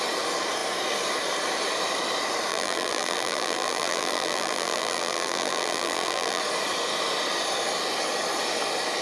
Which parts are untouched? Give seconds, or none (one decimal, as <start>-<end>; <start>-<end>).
0.0-2.5; 6.4-9.0